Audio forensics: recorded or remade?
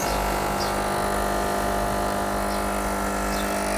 recorded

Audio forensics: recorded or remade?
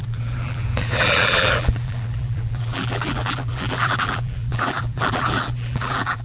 remade